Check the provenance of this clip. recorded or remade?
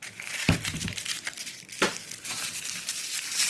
recorded